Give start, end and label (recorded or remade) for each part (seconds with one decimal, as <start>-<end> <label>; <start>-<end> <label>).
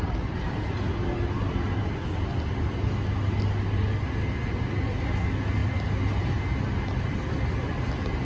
0.0-8.2 recorded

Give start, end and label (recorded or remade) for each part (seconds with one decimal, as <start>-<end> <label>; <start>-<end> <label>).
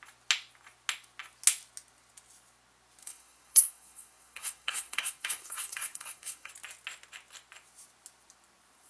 0.0-3.0 recorded; 3.0-6.5 remade; 6.5-8.9 recorded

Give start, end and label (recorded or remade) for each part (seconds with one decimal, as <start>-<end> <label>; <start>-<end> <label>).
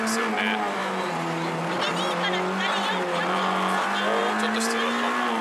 0.0-5.4 recorded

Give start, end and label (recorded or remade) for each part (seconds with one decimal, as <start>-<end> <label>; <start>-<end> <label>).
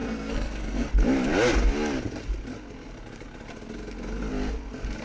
0.0-0.9 remade; 0.9-5.0 recorded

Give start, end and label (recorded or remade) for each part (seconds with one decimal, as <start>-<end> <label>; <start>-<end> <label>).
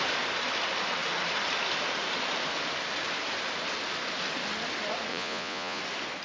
0.0-5.1 recorded; 5.1-5.8 remade; 5.8-6.2 recorded